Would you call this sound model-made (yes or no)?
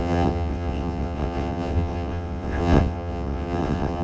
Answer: yes